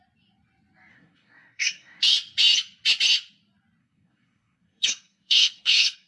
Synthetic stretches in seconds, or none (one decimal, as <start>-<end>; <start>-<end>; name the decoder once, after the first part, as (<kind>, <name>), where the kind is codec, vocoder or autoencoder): 0.9-2.0 (codec, SNAC); 3.8-6.1

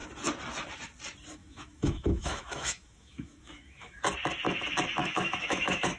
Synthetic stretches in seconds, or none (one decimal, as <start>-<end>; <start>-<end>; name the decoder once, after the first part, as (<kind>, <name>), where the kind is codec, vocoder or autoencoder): 1.4-4.0 (autoencoder, DAC-VAE); 5.0-6.0

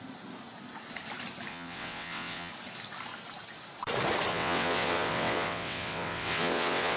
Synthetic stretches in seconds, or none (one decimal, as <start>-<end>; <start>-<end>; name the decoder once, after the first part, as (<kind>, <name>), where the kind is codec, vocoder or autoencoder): 1.5-2.5 (vocoder, WaveNeXt); 4.3-7.0

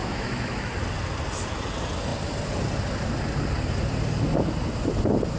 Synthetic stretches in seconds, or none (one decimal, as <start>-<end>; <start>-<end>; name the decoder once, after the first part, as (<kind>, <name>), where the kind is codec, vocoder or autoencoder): 0.0-0.7 (autoencoder, DAC-VAE)

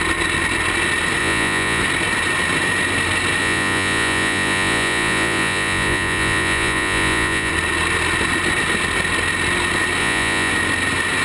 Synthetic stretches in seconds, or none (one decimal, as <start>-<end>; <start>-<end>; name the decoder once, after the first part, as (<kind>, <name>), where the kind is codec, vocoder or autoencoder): 1.2-1.8 (vocoder, Vocos); 3.4-7.5; 10.0-10.5

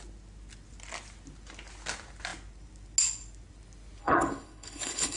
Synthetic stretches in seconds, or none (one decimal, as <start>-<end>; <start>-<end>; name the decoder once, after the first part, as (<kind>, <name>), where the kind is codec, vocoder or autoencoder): 4.0-5.2 (codec, HILCodec)